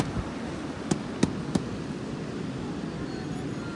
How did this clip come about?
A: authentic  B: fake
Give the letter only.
A